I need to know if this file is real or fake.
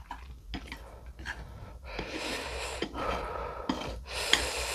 real